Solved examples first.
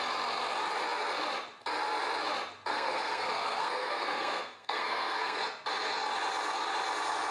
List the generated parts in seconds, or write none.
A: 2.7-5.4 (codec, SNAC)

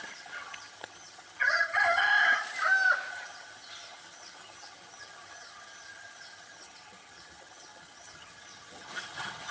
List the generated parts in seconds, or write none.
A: 0.0-2.1 (vocoder, HiFi-GAN); 3.1-9.5

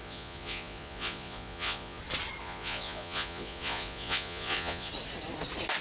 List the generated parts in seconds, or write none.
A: 0.0-2.0 (vocoder, Vocos); 2.4-4.9

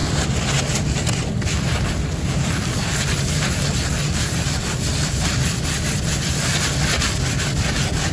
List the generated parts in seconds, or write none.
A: none